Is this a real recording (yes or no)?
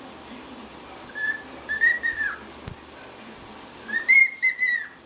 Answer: no